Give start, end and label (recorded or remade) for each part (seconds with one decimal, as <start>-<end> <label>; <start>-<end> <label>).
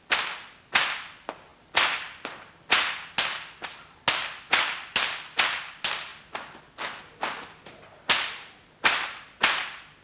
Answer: 0.0-10.0 recorded